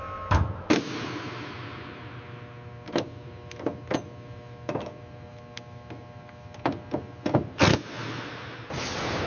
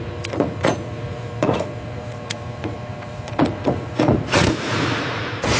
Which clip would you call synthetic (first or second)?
second